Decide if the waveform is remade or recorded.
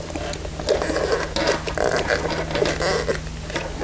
recorded